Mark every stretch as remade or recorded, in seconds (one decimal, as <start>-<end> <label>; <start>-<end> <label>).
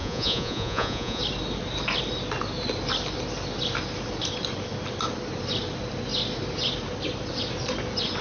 0.0-1.2 remade; 1.2-8.2 recorded